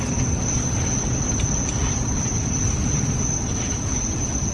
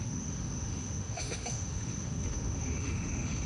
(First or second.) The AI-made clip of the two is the second